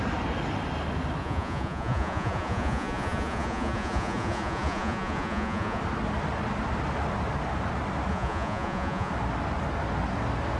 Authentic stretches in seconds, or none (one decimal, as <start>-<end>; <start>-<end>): 0.0-1.2; 5.8-8.1; 9.1-10.6